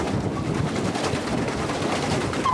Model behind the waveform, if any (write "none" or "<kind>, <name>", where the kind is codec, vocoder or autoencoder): none